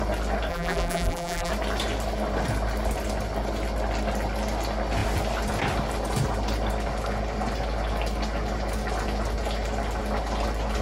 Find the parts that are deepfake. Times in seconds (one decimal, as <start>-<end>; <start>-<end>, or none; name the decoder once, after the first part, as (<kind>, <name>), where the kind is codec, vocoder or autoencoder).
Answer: 0.5-1.5 (vocoder, BigVGAN v2)

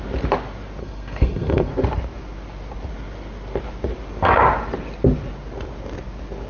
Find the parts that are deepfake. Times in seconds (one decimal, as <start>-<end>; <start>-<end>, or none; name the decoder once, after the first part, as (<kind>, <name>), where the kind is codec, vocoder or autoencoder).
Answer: 0.8-1.7 (codec, SNAC)

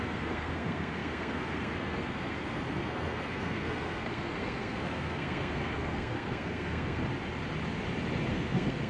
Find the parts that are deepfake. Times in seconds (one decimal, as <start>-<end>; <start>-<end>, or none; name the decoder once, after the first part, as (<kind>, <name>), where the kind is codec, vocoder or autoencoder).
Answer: 0.0-7.0 (codec, SNAC); 8.3-8.9